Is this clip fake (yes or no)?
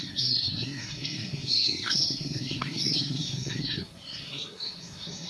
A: yes